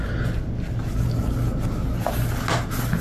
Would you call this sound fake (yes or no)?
no